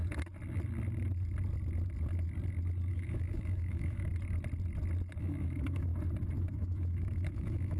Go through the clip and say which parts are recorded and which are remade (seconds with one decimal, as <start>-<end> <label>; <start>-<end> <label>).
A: 0.0-2.9 recorded; 2.9-4.1 remade; 4.1-5.2 recorded; 5.2-5.9 remade; 5.9-6.4 recorded; 6.4-7.8 remade